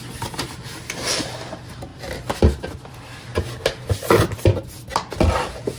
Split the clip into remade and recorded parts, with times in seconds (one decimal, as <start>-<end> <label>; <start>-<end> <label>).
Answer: 0.0-5.8 recorded

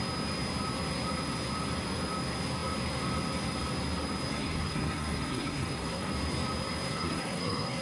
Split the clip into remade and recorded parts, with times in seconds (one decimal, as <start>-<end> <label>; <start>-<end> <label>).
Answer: 0.0-4.3 recorded; 4.3-6.1 remade; 6.1-6.9 recorded; 6.9-7.8 remade

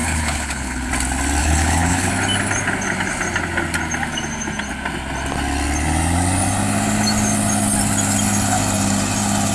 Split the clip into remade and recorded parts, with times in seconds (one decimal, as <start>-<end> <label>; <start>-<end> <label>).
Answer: 0.0-0.9 remade; 0.9-1.4 recorded; 1.4-2.1 remade; 2.1-9.5 recorded

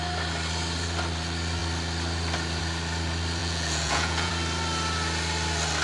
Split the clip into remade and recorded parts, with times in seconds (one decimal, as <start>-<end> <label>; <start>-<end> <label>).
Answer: 0.0-3.4 recorded; 3.4-4.3 remade; 4.3-5.8 recorded

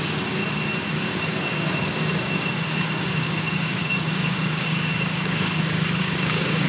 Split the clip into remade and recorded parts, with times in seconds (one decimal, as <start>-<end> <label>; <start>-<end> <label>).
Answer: 0.0-0.4 remade; 0.4-0.9 recorded; 0.9-6.7 remade

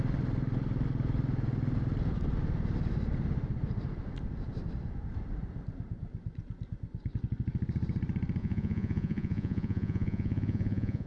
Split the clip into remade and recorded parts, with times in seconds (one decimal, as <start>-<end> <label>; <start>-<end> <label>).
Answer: 0.0-8.4 recorded; 8.4-11.1 remade

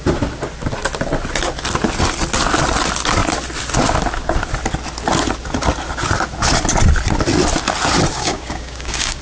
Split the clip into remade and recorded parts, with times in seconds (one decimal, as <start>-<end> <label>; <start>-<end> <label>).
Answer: 0.0-8.1 recorded; 8.1-9.2 remade

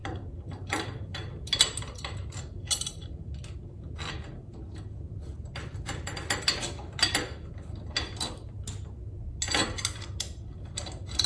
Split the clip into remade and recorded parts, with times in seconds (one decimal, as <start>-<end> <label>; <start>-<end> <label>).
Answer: 0.0-11.3 recorded